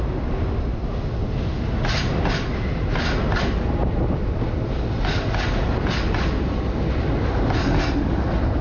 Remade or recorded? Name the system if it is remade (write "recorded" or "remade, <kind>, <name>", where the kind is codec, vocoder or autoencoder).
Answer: recorded